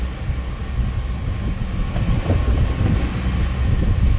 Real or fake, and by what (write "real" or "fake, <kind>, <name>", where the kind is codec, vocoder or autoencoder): real